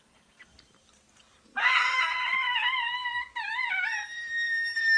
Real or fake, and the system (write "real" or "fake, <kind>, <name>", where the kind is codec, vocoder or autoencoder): fake, vocoder, BigVGAN v2